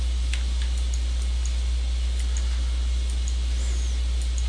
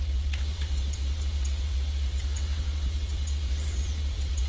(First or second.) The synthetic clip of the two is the second